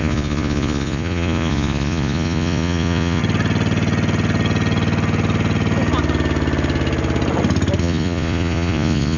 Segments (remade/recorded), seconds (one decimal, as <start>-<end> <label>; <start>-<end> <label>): 0.0-3.2 remade; 3.2-7.8 recorded; 7.8-9.2 remade